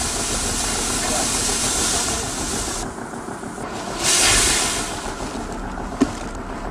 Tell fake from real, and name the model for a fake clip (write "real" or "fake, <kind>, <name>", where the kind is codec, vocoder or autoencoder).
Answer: real